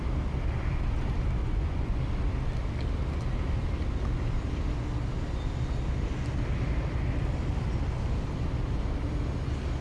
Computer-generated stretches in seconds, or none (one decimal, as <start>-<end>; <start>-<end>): 1.4-2.0